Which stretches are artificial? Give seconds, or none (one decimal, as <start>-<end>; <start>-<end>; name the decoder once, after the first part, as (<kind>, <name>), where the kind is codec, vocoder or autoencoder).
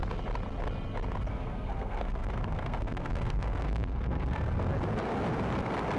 1.3-4.7 (codec, SNAC)